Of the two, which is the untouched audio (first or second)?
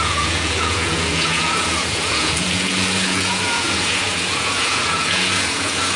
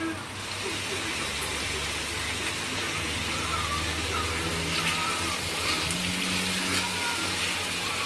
second